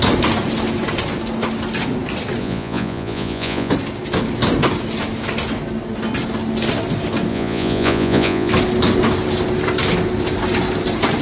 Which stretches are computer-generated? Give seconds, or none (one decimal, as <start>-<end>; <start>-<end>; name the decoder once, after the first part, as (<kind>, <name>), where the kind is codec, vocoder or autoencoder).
2.4-3.7 (vocoder, Vocos); 7.3-8.5